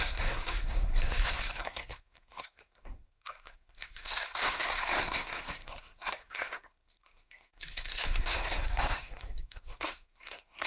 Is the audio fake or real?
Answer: fake